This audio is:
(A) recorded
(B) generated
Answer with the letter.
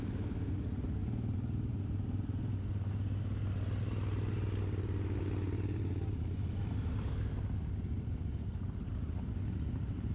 A